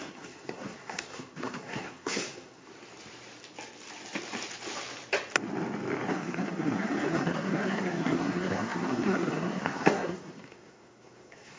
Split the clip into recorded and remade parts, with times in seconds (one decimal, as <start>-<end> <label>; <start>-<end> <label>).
0.0-2.7 remade; 2.7-6.1 recorded; 6.1-11.6 remade